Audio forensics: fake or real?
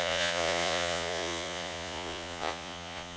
fake